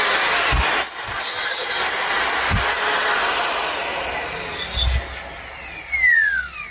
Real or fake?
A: real